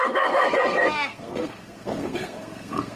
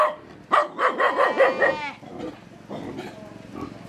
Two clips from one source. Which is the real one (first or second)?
second